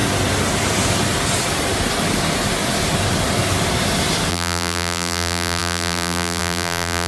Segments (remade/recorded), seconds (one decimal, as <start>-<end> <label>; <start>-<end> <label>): 0.0-4.3 recorded; 4.3-7.1 remade